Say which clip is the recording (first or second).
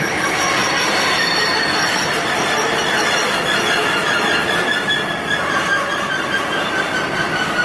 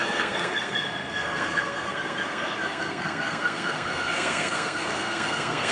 first